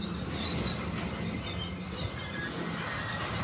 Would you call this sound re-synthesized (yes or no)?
no